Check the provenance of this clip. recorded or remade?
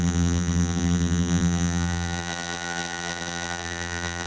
remade